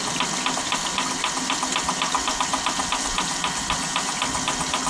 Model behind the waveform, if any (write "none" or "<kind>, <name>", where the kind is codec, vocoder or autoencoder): none